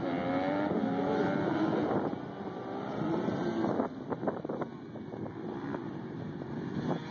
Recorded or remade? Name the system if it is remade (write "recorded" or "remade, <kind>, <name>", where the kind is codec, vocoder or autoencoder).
recorded